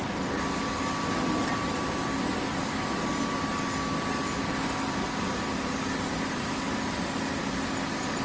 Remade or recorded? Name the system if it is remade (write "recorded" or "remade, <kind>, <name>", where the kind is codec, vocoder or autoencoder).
recorded